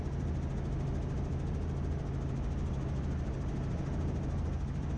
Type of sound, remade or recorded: recorded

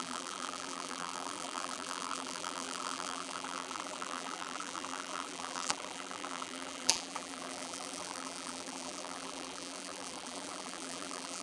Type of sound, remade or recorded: remade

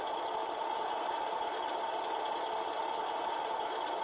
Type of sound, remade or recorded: recorded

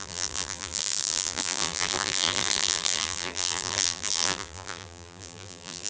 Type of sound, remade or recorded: remade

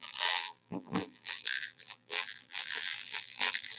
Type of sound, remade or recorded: remade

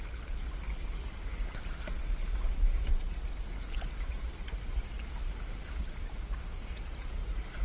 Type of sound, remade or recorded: recorded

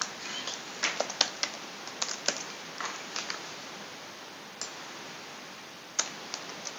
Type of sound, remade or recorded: recorded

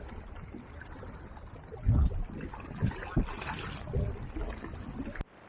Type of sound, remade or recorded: recorded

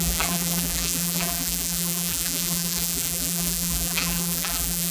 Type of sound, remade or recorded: remade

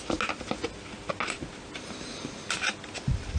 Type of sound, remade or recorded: recorded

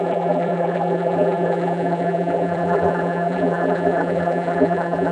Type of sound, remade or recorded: remade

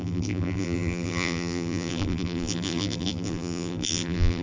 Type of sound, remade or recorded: remade